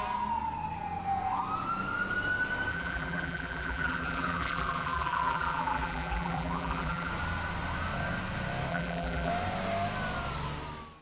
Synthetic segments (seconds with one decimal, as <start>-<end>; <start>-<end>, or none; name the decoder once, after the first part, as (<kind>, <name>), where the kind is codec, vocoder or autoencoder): 2.7-7.1 (vocoder, BigVGAN v2); 8.7-9.3